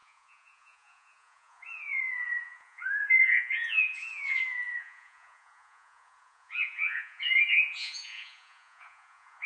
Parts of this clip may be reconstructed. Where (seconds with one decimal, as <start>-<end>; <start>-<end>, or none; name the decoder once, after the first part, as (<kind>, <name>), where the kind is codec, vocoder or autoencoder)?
0.0-9.5 (vocoder, Vocos)